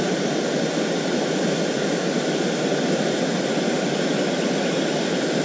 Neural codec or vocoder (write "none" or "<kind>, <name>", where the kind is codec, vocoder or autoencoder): none